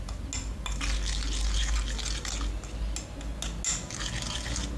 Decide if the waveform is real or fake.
real